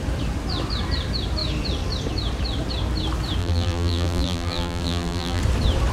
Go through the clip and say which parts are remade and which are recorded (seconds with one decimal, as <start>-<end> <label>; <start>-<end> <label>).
0.0-3.4 recorded; 3.4-5.4 remade; 5.4-5.9 recorded